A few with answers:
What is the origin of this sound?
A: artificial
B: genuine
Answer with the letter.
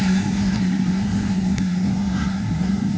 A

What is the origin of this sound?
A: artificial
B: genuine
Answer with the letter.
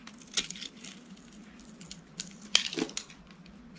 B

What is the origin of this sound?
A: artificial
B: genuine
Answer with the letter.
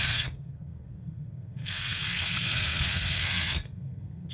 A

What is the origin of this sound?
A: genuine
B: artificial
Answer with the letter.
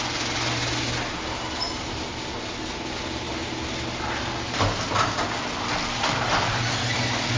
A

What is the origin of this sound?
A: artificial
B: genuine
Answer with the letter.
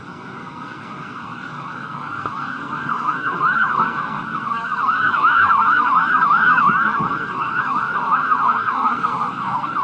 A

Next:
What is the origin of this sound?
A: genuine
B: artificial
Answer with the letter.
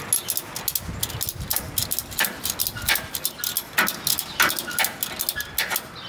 A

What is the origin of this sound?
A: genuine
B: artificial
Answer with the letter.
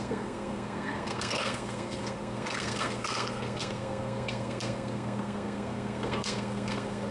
B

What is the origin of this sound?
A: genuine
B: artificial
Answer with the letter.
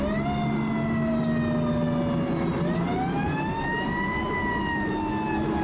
A